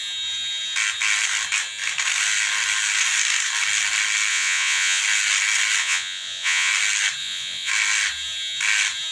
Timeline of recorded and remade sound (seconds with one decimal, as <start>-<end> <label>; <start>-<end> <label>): 0.0-4.3 recorded; 4.3-5.0 remade; 5.0-5.8 recorded; 5.8-6.7 remade; 6.7-7.2 recorded; 7.2-7.7 remade; 7.7-9.1 recorded